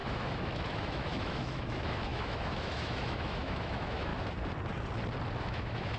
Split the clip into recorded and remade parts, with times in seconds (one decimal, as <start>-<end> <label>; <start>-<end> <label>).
0.0-4.1 remade; 4.1-5.4 recorded; 5.4-6.0 remade